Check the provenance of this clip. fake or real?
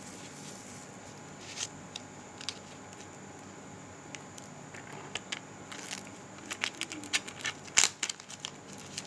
real